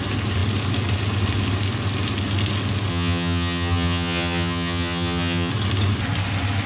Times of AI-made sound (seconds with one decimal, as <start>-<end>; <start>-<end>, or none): 2.9-5.5